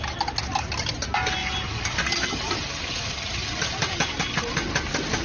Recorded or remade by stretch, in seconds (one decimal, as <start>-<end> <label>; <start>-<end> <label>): 0.0-5.2 recorded